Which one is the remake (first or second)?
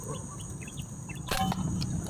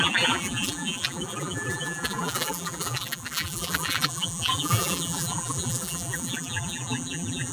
second